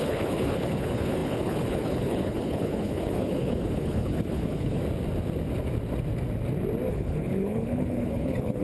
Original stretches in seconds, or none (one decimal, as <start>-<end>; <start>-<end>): 4.8-6.9